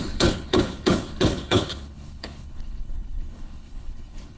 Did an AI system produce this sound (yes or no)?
yes